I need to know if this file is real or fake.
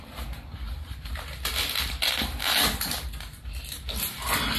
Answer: real